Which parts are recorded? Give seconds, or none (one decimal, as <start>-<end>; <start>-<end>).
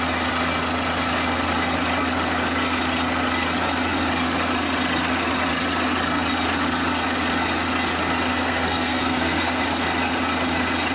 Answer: 0.0-8.3; 9.6-10.9